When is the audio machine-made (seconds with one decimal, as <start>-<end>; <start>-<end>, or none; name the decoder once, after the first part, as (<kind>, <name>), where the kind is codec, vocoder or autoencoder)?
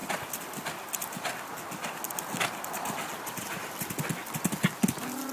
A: none